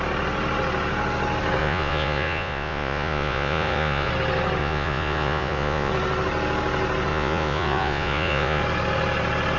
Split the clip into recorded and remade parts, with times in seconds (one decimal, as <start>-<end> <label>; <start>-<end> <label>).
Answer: 0.0-1.6 recorded; 1.6-4.1 remade; 4.1-4.6 recorded; 4.6-5.9 remade; 5.9-7.1 recorded; 7.1-8.6 remade; 8.6-9.6 recorded